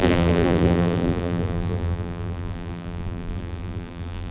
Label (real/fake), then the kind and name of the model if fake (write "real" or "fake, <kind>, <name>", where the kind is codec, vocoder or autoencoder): fake, vocoder, BigVGAN v2